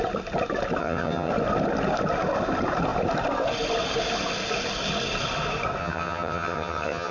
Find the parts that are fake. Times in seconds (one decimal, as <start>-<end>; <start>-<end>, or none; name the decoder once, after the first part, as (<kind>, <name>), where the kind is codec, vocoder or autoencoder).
0.8-1.3 (vocoder, HiFi-GAN); 5.8-7.1

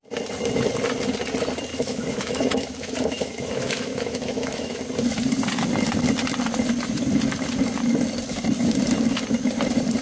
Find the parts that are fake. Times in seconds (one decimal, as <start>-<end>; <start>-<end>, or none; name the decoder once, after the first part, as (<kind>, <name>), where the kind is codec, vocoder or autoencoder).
1.7-4.8 (autoencoder, DAC-VAE)

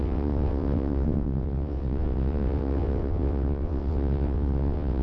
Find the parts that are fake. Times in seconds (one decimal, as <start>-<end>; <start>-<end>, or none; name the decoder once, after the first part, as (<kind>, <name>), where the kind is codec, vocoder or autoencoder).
0.0-5.0 (vocoder, WaveNeXt)